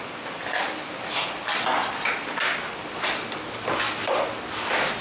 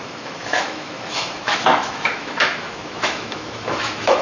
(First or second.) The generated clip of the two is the second